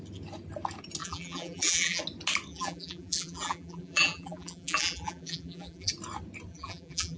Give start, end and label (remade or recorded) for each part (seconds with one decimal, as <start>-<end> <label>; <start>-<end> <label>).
0.0-1.0 recorded; 1.0-2.0 remade; 2.0-2.5 recorded; 2.5-5.9 remade; 5.9-6.5 recorded; 6.5-7.2 remade